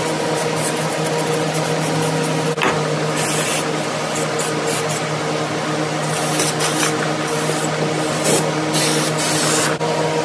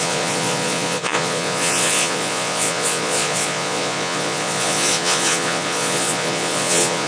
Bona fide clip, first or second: first